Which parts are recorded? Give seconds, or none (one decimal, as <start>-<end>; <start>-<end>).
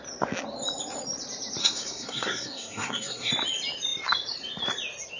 0.0-1.6; 3.3-5.2